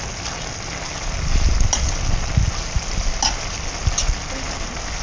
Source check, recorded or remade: recorded